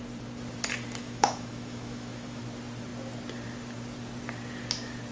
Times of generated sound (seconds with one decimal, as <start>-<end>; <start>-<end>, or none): 1.0-2.4